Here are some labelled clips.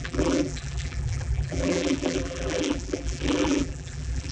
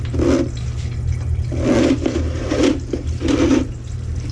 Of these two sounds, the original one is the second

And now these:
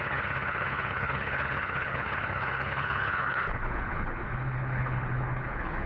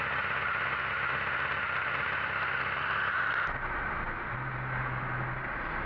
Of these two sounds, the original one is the second